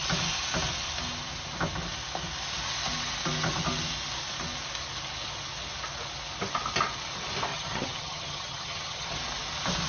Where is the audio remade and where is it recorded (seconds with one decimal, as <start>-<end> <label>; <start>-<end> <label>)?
0.0-7.5 recorded; 7.5-9.2 remade; 9.2-9.9 recorded